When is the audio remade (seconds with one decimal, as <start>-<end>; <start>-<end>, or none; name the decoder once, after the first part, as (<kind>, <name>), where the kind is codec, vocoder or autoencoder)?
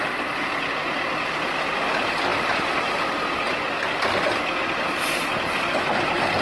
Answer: none